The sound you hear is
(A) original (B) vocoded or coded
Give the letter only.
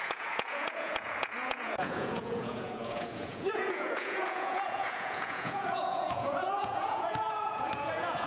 B